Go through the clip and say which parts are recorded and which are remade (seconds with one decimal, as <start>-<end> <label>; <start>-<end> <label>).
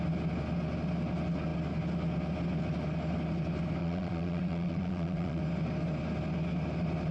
0.0-3.8 recorded; 3.8-5.4 remade; 5.4-7.1 recorded